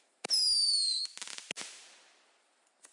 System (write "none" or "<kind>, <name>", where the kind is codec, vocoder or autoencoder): none